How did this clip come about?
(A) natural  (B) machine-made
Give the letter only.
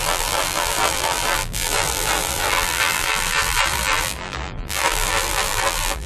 B